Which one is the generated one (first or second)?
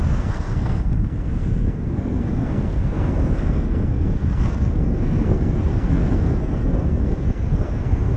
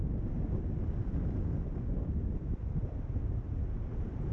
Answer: first